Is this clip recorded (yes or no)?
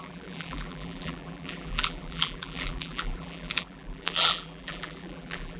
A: no